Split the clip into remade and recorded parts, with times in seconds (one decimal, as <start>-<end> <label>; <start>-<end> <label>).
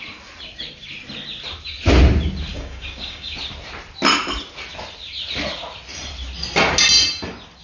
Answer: 0.0-2.5 recorded; 2.5-3.3 remade; 3.3-7.6 recorded